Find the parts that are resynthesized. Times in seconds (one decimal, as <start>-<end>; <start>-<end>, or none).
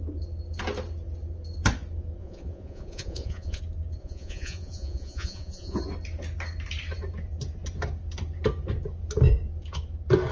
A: 2.2-3.6; 4.0-5.8